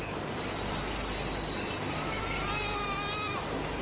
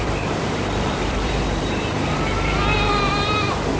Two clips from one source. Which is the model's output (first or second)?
second